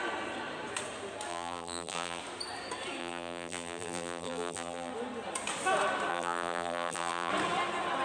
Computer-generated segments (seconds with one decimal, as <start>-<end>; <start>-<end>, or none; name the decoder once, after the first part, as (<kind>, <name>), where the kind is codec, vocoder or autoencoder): 1.3-2.2 (vocoder, BigVGAN v2); 3.0-4.9; 6.1-7.3